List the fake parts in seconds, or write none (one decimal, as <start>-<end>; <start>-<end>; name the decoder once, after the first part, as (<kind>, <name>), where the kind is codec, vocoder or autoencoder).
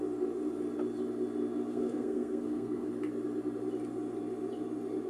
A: 1.7-2.9 (codec, SNAC)